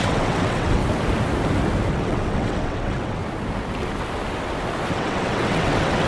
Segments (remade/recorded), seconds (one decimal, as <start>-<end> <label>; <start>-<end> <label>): 0.0-0.8 remade; 0.8-1.9 recorded; 1.9-3.2 remade; 3.2-4.9 recorded; 4.9-6.1 remade